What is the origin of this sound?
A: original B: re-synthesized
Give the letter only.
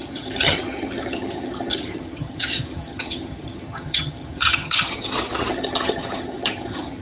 B